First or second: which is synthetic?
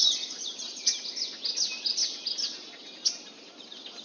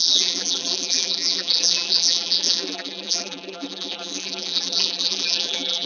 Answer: second